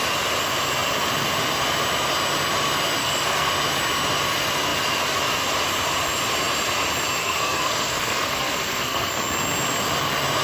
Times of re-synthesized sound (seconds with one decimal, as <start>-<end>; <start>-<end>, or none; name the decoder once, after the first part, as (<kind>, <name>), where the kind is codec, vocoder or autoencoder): 3.0-3.5 (codec, SNAC); 7.2-9.1